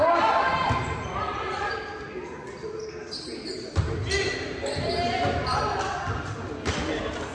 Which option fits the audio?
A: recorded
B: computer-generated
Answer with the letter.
A